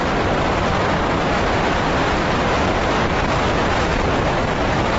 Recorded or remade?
remade